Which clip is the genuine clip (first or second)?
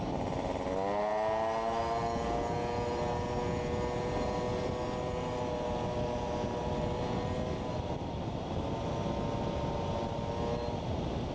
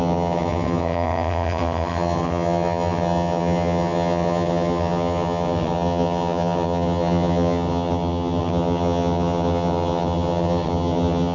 first